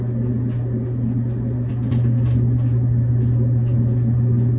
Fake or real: real